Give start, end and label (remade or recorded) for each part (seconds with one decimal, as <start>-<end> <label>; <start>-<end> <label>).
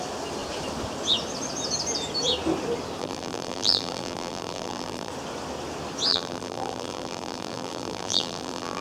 0.0-3.0 recorded; 3.0-5.1 remade; 5.1-6.1 recorded; 6.1-8.8 remade